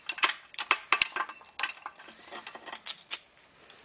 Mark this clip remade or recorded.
recorded